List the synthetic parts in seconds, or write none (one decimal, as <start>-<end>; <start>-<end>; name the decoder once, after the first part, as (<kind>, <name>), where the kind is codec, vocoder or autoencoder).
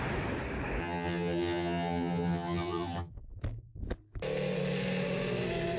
0.8-3.1 (vocoder, HiFi-GAN)